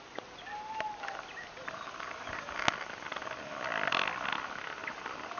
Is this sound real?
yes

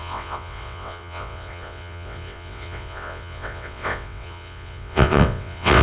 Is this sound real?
no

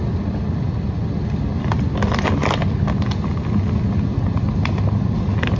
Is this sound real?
yes